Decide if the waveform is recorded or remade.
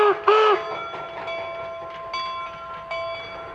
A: recorded